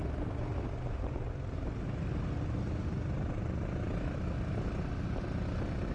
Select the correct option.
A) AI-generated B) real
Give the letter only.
B